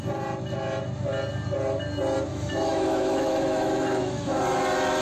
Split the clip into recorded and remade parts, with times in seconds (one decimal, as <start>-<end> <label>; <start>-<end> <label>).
0.0-2.3 recorded; 2.3-4.4 remade; 4.4-5.0 recorded